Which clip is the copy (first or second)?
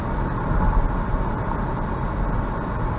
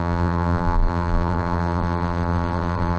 second